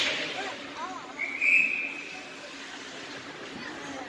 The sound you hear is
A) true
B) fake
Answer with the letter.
A